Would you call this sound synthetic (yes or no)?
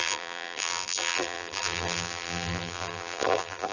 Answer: yes